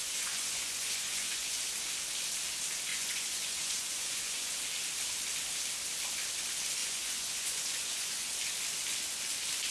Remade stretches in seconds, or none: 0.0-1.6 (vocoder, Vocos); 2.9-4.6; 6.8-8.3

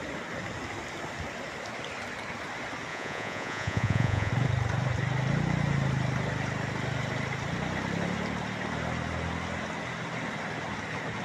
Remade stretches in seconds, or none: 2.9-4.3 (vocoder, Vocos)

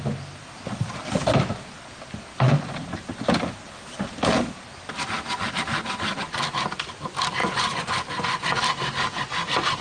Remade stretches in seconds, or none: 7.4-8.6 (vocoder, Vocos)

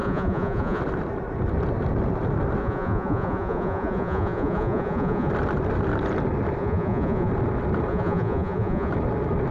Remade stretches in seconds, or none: 0.0-0.8 (vocoder, Vocos); 2.6-5.3; 6.6-7.3; 7.9-8.9

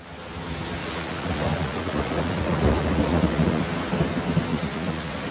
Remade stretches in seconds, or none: 0.8-3.6 (vocoder, Vocos); 4.5-5.3

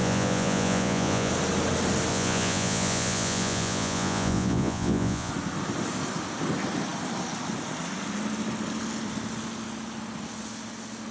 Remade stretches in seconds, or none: 0.0-1.3 (vocoder, Vocos); 2.1-5.3

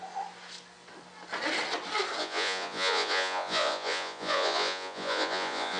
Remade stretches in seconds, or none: 2.2-5.8 (vocoder, Vocos)

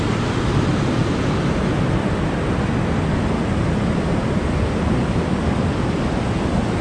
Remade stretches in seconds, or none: none